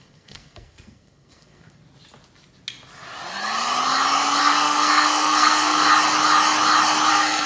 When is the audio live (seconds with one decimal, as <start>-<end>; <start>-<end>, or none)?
1.8-4.4; 5.9-7.1